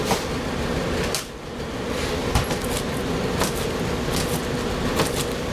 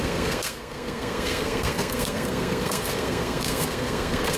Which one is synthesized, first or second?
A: second